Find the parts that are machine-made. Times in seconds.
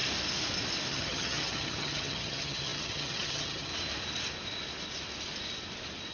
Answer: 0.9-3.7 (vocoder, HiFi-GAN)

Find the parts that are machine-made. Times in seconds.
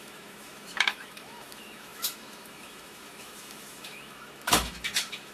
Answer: 0.0-5.3 (autoencoder, DAC-VAE)